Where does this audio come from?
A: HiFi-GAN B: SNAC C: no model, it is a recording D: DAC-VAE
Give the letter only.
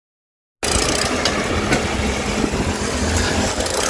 C